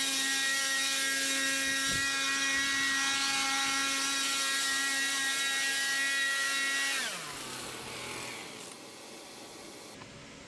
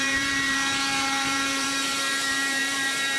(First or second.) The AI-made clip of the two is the second